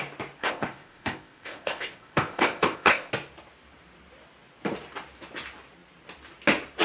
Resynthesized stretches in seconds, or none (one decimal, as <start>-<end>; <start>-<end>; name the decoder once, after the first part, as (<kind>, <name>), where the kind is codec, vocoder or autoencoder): 0.4-3.1 (codec, ZipCodec)